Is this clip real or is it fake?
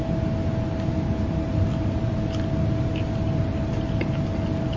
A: real